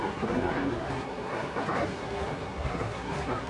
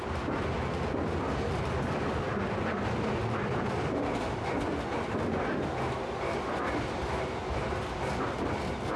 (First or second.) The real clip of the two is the second